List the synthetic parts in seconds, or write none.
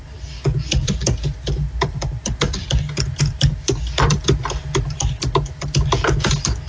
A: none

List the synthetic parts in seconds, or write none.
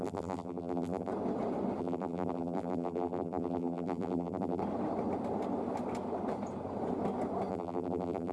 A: 0.0-1.1 (vocoder, BigVGAN v2); 1.8-4.6; 7.5-8.3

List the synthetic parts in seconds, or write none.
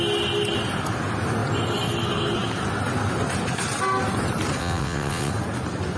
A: 4.6-5.3 (vocoder, WaveNeXt)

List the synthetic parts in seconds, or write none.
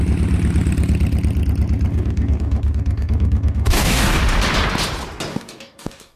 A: 1.9-4.2 (codec, DAC); 5.3-6.2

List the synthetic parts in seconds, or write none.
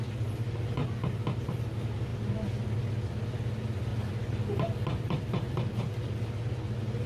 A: 3.9-5.8 (vocoder, BigVGAN v2)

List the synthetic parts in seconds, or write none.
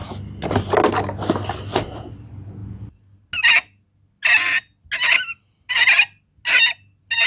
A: none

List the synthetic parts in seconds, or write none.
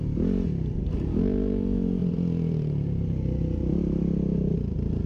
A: 2.0-4.5 (vocoder, BigVGAN v2)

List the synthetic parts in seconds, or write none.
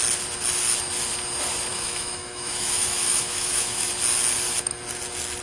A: 1.7-3.9 (autoencoder, DAC-VAE)